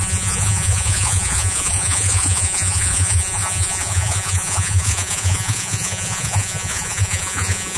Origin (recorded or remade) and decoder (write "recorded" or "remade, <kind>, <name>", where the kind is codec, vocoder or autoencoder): remade, vocoder, Vocos